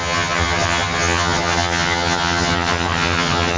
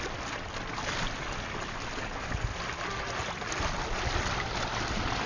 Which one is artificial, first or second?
first